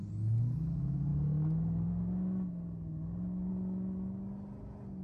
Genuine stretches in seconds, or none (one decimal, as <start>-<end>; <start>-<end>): 0.0-5.0